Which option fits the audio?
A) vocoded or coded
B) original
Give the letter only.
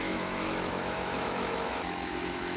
A